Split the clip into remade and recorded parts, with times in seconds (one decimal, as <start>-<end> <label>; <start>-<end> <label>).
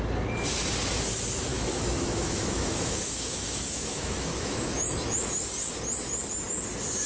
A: 0.0-1.5 recorded; 1.5-5.3 remade; 5.3-7.1 recorded